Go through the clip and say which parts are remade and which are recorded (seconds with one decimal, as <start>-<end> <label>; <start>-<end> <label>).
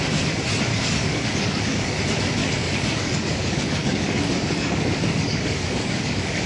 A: 0.0-0.7 recorded; 0.7-2.0 remade; 2.0-2.4 recorded; 2.4-6.5 remade